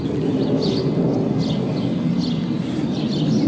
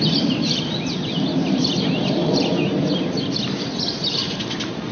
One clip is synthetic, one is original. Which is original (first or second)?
first